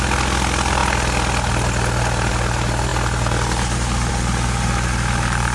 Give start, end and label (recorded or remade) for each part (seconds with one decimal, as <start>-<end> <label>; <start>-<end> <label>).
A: 0.0-5.5 recorded